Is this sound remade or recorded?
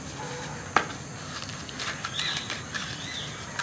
recorded